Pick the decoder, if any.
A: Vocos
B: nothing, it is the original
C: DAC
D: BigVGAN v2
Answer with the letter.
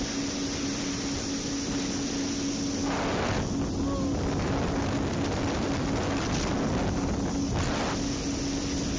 B